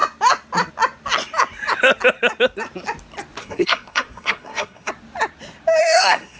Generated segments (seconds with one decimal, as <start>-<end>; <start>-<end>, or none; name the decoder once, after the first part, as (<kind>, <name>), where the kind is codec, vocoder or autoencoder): 3.4-4.9 (codec, SNAC); 5.8-6.4